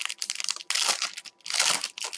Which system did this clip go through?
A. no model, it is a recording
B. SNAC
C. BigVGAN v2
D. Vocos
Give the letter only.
A